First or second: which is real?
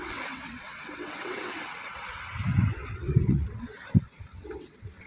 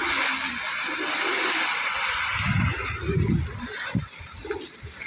second